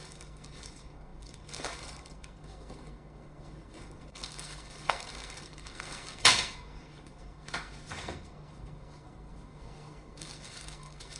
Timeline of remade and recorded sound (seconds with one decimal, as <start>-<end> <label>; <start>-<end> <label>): 0.0-11.2 remade